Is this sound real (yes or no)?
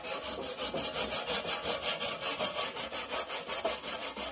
yes